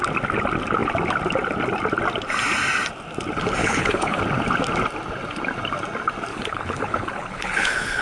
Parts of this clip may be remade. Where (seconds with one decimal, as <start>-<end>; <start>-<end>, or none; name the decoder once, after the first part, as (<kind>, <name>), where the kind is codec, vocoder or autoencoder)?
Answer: 3.6-4.2 (codec, HILCodec); 6.3-8.0